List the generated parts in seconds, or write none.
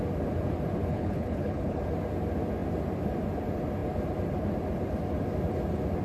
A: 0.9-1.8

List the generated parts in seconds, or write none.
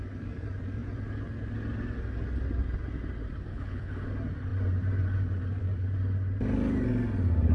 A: 3.5-4.1